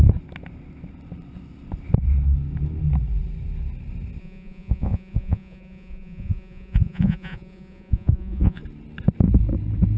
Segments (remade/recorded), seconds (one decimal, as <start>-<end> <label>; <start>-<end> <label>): 0.0-4.2 recorded; 4.2-8.6 remade; 8.6-10.0 recorded